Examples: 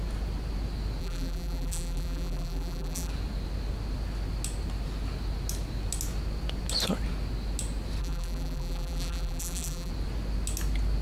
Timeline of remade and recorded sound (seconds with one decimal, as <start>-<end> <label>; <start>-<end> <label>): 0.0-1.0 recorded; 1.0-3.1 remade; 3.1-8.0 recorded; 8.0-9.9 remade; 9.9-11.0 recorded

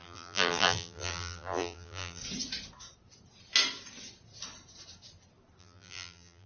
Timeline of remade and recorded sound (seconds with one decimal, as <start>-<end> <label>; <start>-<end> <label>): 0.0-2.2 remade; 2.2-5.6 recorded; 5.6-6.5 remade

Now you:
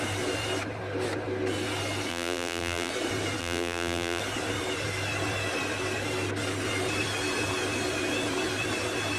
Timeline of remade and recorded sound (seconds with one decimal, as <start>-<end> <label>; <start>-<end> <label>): 0.0-2.1 recorded; 2.1-2.9 remade; 2.9-3.4 recorded; 3.4-4.2 remade; 4.2-9.2 recorded

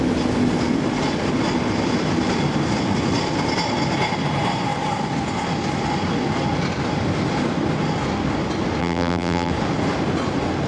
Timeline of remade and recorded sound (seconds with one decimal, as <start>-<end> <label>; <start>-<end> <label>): 0.0-8.8 recorded; 8.8-9.5 remade; 9.5-10.7 recorded